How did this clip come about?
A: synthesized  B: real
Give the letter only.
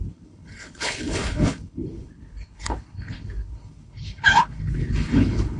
A